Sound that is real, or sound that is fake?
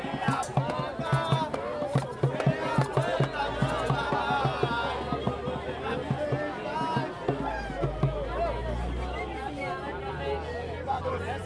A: real